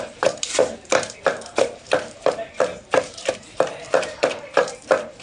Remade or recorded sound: remade